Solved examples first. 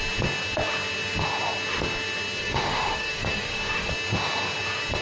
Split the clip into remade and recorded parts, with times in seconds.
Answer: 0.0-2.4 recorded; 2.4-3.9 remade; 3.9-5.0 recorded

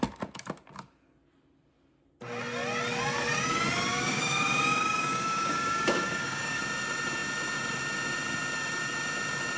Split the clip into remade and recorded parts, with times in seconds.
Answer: 0.0-3.9 recorded; 3.9-6.6 remade; 6.6-9.6 recorded

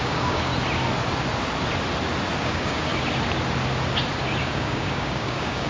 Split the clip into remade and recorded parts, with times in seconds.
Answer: 0.0-0.5 remade; 0.5-2.4 recorded; 2.4-2.9 remade; 2.9-4.4 recorded; 4.4-5.7 remade

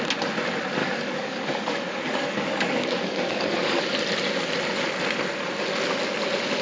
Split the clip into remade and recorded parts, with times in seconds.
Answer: 0.0-0.8 recorded; 0.8-3.8 remade; 3.8-6.6 recorded